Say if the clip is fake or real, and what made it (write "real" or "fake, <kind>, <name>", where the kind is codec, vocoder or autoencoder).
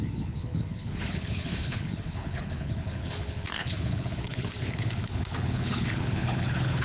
fake, codec, HILCodec